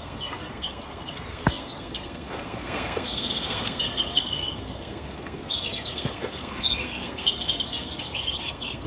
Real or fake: fake